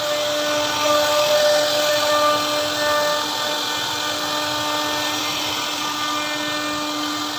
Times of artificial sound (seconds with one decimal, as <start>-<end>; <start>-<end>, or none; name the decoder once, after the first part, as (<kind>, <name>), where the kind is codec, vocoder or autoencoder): none